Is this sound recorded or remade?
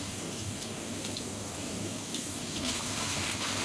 remade